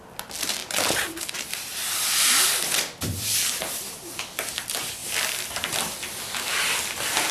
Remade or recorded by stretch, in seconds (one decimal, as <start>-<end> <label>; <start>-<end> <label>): 0.0-0.6 recorded; 0.6-1.2 remade; 1.2-5.0 recorded; 5.0-6.0 remade; 6.0-7.3 recorded